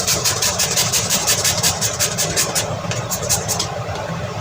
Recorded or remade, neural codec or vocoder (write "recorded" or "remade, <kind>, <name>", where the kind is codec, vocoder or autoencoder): remade, vocoder, BigVGAN v2